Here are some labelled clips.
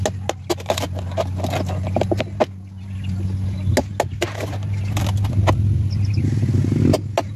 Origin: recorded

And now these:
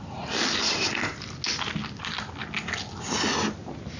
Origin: recorded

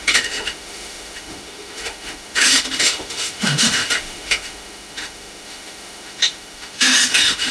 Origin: remade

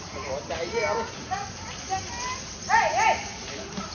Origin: recorded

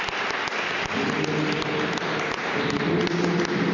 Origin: recorded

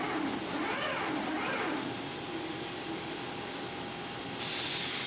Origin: recorded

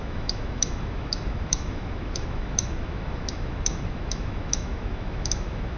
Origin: remade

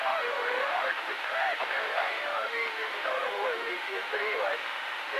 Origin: remade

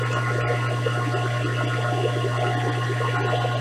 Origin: recorded